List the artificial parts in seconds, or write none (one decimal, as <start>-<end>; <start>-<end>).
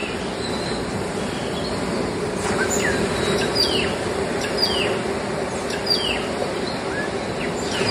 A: none